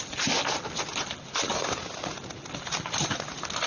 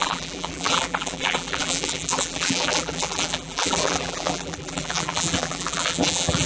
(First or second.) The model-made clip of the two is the second